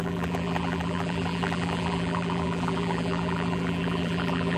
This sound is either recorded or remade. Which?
remade